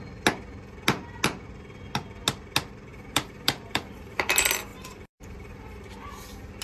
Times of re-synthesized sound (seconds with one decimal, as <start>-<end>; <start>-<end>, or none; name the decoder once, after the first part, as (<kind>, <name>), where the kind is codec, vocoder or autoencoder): 2.9-4.3 (vocoder, BigVGAN v2); 4.7-6.1